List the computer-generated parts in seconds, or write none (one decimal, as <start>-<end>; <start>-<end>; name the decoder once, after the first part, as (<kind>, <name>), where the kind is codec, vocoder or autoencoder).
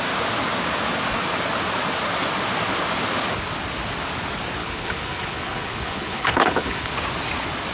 4.6-6.9 (codec, HILCodec)